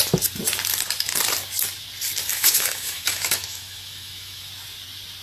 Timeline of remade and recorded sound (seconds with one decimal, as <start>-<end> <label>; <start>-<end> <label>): 0.0-2.3 recorded; 2.3-4.5 remade; 4.5-5.2 recorded